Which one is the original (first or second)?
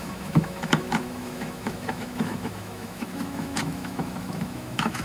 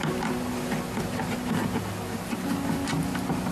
second